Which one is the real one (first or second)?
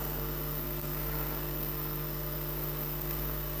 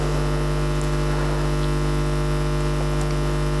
second